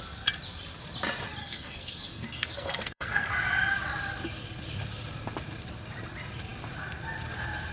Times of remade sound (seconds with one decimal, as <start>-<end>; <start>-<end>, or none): 1.4-3.3